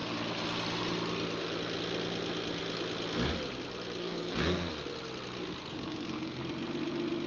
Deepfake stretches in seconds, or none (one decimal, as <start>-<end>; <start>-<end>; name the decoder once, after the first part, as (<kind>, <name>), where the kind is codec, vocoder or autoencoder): 4.0-4.7 (codec, SNAC); 5.7-6.4